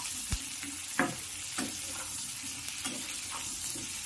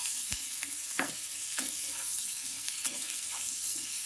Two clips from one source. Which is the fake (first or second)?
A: second